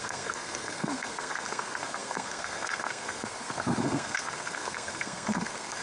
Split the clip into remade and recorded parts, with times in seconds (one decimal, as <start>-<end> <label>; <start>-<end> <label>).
0.0-5.8 remade